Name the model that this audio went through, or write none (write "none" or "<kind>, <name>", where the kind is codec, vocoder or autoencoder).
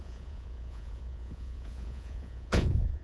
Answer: vocoder, Vocos